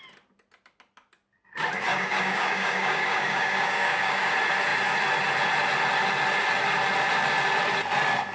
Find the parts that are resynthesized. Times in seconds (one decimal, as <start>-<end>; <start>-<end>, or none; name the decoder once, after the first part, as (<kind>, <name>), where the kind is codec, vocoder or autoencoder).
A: 1.9-4.3 (codec, DAC)